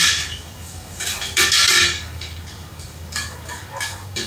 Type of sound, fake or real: fake